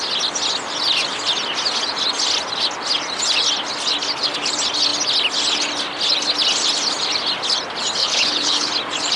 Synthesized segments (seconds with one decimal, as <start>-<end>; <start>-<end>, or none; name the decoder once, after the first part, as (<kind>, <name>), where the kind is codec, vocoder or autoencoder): 8.0-8.7 (codec, HILCodec)